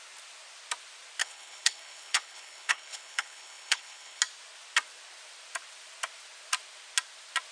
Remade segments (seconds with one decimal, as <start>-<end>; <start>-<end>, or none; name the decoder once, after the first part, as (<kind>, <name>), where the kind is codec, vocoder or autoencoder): 1.2-4.2 (codec, HILCodec)